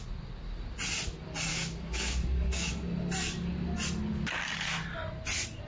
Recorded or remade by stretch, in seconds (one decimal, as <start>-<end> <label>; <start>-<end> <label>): 0.0-1.5 recorded; 1.5-2.7 remade; 2.7-5.7 recorded